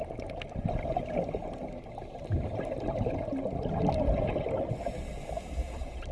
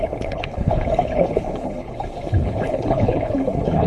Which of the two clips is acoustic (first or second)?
first